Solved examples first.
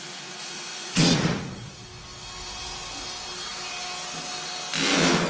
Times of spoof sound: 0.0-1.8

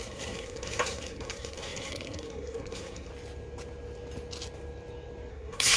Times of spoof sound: 0.0-3.1; 5.3-5.8

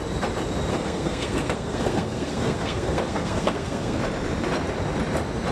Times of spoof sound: 0.7-4.0